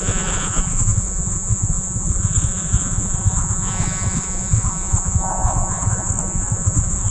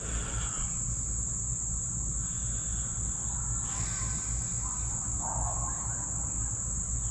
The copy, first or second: first